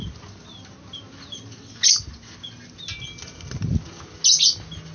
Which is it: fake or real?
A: real